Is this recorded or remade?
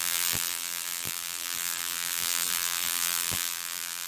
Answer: remade